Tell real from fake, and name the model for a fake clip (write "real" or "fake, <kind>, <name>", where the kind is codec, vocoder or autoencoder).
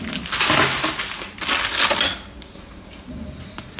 real